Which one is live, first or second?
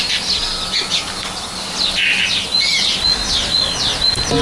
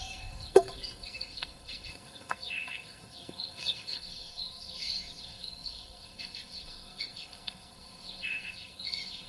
first